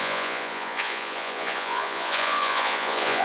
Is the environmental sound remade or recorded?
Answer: remade